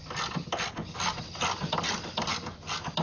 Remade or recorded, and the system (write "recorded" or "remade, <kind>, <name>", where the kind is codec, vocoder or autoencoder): recorded